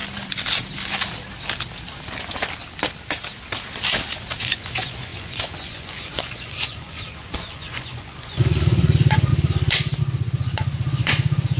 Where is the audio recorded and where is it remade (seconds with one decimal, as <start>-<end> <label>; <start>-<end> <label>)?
0.0-4.4 recorded; 4.4-9.3 remade; 9.3-10.0 recorded; 10.0-11.6 remade